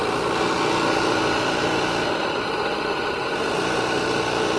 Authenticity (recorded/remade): recorded